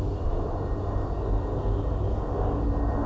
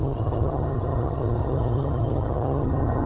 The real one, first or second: first